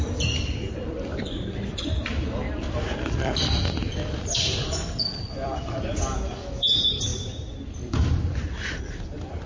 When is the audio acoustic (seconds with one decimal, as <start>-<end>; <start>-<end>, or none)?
none